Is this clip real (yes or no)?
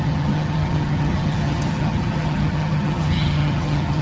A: no